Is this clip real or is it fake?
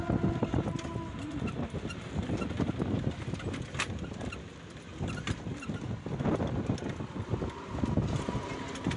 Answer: real